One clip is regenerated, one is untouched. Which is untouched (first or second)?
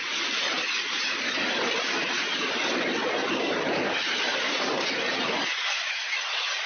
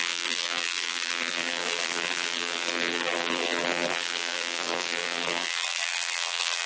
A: first